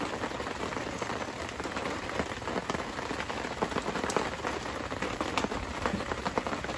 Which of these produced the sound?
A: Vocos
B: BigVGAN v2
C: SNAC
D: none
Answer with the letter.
D